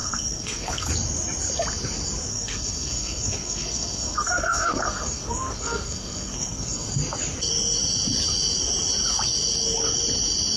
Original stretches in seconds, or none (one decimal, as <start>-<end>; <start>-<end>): 0.9-2.3; 6.9-10.6